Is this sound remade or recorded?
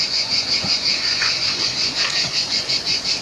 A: remade